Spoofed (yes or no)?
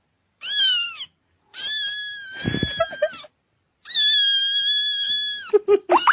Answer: no